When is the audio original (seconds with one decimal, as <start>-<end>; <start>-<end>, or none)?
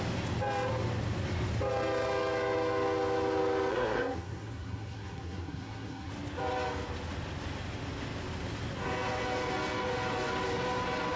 0.0-3.7; 6.1-11.2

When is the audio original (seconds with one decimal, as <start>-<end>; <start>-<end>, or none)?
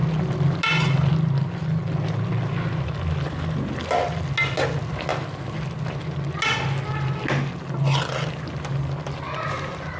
0.0-10.0